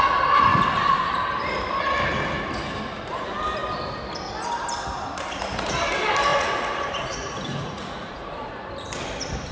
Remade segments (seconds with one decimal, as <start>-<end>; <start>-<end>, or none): 6.3-8.7